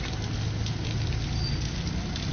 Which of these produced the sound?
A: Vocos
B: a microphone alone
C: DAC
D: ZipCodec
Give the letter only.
B